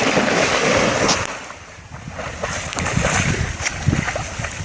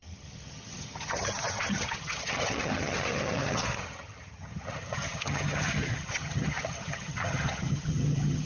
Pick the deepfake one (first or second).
second